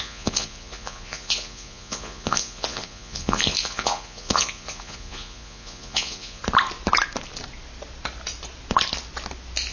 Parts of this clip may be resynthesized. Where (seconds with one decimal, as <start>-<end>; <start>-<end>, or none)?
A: 0.0-6.4

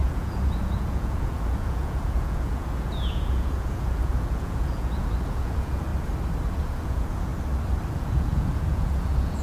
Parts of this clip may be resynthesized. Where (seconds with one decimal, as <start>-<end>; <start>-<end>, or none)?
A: 0.0-5.9; 6.5-7.3; 7.9-9.4

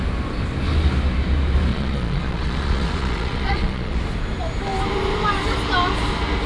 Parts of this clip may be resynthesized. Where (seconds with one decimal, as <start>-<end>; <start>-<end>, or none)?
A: 1.7-4.0

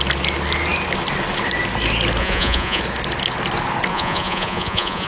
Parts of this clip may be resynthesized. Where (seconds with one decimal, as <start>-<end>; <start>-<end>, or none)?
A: 2.2-2.8; 3.9-5.1